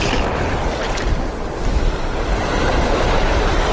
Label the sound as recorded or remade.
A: recorded